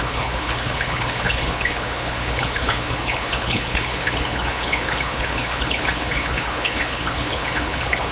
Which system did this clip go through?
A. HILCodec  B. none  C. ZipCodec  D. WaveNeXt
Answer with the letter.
A